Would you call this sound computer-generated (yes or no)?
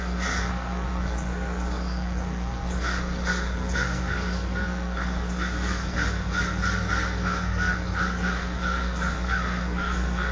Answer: yes